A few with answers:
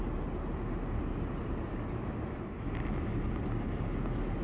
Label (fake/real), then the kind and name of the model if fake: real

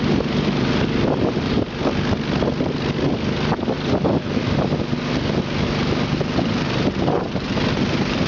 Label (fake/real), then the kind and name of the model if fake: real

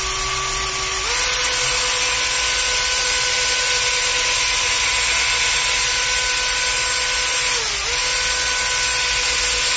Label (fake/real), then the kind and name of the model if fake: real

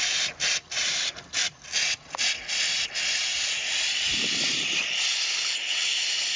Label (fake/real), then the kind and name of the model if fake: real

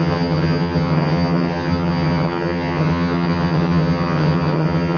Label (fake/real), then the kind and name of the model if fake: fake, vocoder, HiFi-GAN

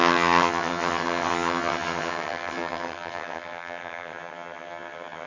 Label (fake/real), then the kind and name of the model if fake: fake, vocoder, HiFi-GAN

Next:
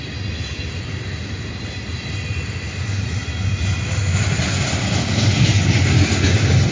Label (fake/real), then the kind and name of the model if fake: real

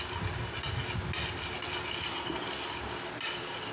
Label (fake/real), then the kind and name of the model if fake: real